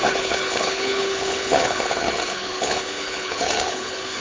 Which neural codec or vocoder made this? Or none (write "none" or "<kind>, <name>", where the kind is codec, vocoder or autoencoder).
codec, HILCodec